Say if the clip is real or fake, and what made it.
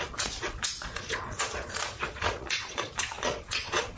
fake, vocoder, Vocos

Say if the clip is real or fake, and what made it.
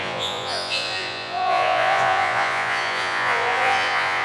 fake, vocoder, Vocos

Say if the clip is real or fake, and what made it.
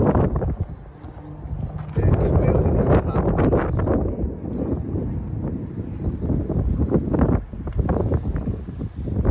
real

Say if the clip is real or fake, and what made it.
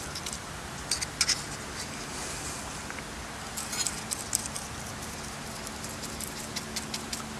real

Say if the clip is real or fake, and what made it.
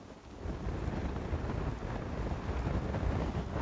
real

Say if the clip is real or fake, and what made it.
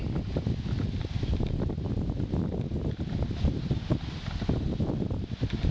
real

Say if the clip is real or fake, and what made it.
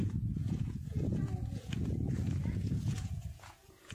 fake, vocoder, Vocos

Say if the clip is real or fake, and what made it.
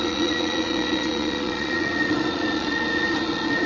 fake, vocoder, Vocos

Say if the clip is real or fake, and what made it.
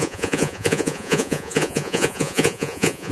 fake, vocoder, Vocos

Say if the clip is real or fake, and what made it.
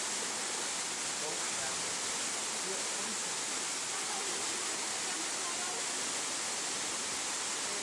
real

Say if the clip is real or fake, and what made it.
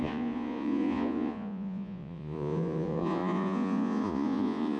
fake, vocoder, Vocos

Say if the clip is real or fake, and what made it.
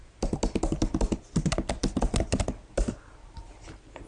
real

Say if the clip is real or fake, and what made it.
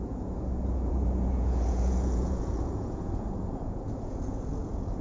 fake, vocoder, Vocos